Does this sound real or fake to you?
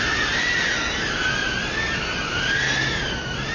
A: real